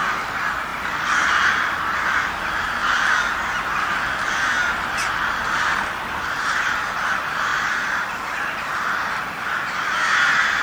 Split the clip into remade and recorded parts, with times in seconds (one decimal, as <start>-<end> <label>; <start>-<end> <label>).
0.0-0.7 remade; 0.7-1.3 recorded; 1.3-2.8 remade; 2.8-4.3 recorded; 4.3-7.5 remade; 7.5-10.6 recorded